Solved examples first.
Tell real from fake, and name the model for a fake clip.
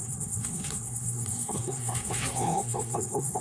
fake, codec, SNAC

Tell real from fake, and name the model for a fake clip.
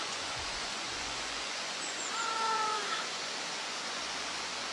fake, vocoder, Vocos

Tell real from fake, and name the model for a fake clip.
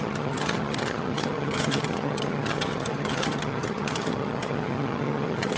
fake, vocoder, HiFi-GAN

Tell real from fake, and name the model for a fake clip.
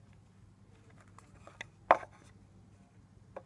real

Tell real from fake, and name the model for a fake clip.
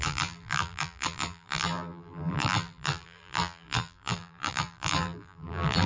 fake, vocoder, BigVGAN v2